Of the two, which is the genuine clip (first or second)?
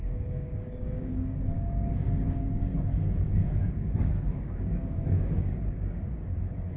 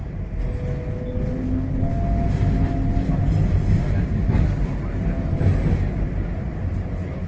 second